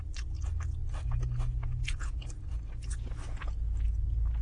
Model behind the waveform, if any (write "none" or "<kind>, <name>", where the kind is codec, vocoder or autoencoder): none